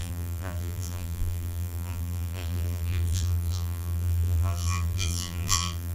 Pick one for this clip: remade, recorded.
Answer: remade